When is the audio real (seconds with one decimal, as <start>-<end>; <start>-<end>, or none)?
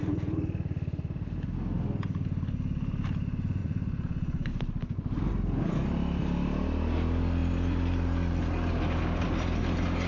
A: 0.0-3.6; 4.5-10.1